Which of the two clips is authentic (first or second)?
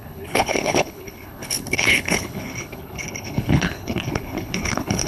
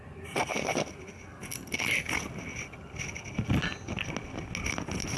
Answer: second